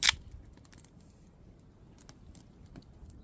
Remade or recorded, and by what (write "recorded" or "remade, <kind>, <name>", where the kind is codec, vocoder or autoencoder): recorded